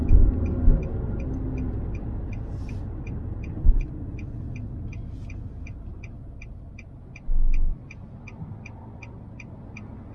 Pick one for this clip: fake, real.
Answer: real